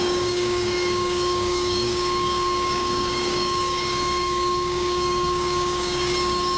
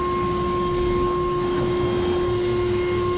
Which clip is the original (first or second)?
second